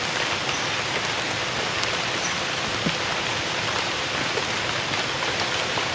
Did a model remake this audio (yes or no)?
no